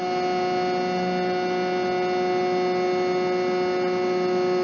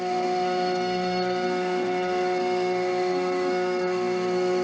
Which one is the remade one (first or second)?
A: second